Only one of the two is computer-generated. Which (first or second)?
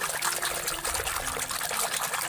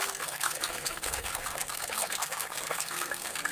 second